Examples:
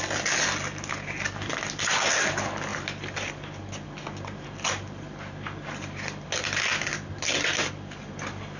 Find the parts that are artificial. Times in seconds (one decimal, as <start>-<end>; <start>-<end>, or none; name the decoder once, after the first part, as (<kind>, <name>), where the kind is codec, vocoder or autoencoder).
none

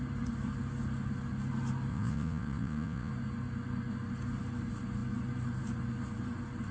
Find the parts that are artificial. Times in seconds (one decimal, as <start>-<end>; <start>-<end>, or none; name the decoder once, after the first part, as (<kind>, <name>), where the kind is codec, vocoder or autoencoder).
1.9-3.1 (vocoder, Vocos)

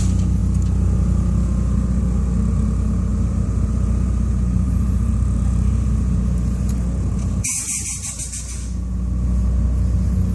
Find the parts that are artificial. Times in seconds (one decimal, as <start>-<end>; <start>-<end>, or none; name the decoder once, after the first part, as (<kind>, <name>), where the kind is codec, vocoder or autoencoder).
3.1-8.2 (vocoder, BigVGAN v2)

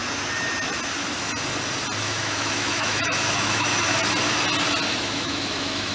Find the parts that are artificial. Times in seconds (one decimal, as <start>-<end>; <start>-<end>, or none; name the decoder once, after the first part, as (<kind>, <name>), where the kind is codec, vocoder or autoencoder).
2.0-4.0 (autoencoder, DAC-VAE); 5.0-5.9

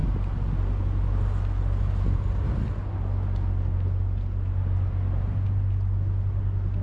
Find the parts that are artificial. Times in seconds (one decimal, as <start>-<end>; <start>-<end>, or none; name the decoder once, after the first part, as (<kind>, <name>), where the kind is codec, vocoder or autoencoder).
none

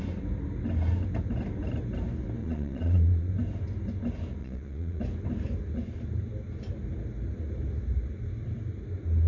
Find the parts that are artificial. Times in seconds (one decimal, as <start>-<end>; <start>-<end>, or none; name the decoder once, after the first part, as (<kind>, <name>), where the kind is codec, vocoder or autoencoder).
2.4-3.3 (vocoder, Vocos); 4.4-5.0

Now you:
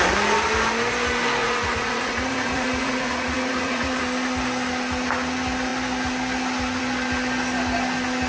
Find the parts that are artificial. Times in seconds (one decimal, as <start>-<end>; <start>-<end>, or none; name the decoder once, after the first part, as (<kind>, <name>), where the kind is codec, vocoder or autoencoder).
1.4-4.0 (vocoder, Vocos)